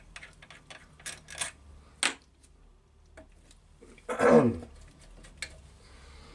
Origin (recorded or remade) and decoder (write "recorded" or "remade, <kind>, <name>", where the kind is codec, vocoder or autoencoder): recorded